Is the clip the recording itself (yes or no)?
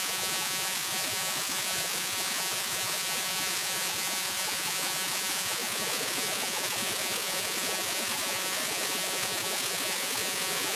no